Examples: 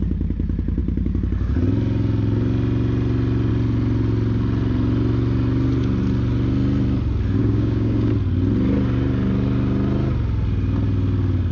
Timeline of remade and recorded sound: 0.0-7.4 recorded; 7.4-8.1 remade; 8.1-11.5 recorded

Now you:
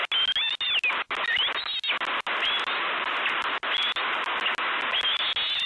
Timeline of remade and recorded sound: 0.0-5.7 recorded

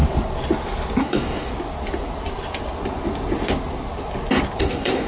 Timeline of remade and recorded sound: 0.0-1.0 recorded; 1.0-1.5 remade; 1.5-4.6 recorded; 4.6-5.1 remade